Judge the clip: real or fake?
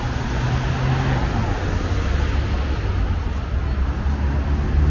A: real